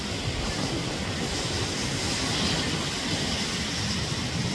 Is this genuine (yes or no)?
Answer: yes